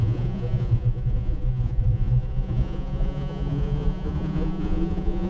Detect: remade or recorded remade